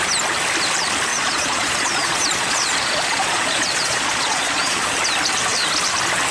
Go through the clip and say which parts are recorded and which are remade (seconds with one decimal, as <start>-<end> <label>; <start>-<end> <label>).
0.0-1.1 recorded; 1.1-4.9 remade; 4.9-6.3 recorded